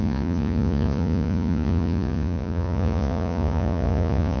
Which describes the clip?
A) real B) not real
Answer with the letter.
B